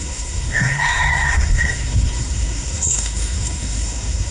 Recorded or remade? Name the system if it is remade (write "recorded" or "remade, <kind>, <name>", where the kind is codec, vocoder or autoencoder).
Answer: remade, codec, SNAC